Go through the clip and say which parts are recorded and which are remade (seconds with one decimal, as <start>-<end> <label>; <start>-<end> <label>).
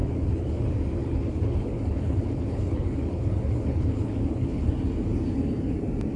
0.0-0.6 remade; 0.6-1.0 recorded; 1.0-4.7 remade; 4.7-6.2 recorded